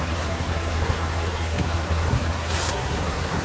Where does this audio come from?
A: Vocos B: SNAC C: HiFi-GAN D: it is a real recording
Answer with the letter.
B